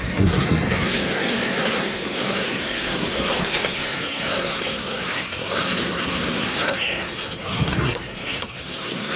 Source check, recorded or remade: remade